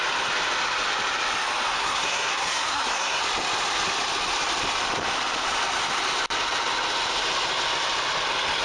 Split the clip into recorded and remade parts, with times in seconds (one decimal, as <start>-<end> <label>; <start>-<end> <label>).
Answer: 0.0-1.7 recorded; 1.7-3.2 remade; 3.2-8.6 recorded